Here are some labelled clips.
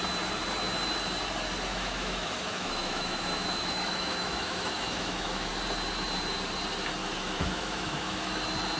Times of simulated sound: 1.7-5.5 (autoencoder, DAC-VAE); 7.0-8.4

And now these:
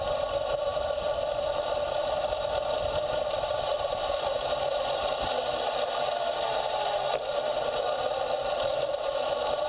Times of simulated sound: none

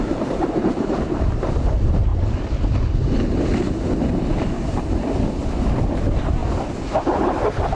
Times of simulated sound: 0.0-2.1 (vocoder, BigVGAN v2); 5.3-6.4

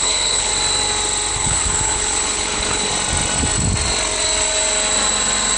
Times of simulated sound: 0.0-0.5 (codec, HILCodec); 1.3-2.9

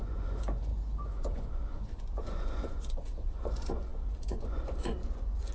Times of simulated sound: 0.0-5.5 (vocoder, Vocos)

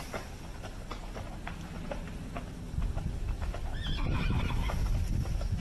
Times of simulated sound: none